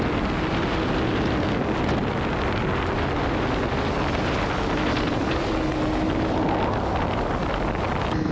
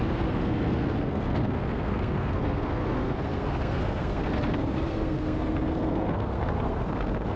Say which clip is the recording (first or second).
first